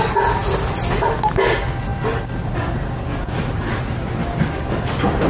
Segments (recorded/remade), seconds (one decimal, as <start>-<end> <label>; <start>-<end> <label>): 0.0-5.3 recorded